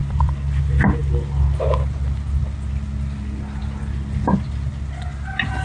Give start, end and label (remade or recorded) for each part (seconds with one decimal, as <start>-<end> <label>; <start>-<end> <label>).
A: 0.0-0.6 remade; 0.6-5.6 recorded